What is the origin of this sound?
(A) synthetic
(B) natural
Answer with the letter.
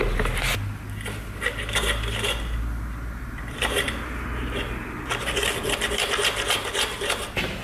B